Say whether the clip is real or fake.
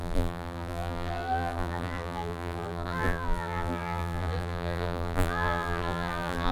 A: fake